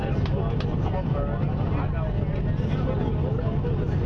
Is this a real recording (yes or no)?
yes